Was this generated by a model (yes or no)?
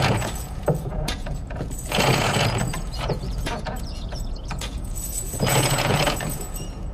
yes